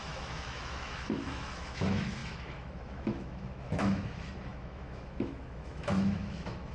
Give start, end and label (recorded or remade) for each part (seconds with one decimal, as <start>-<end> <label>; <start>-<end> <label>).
0.0-6.7 remade